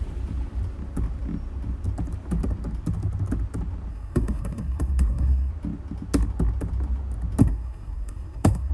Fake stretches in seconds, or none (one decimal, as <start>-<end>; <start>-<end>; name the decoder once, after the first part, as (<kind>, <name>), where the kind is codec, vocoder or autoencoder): 3.9-5.5 (codec, SNAC); 7.4-8.7